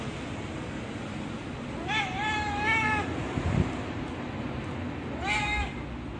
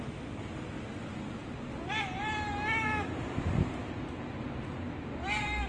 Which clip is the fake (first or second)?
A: first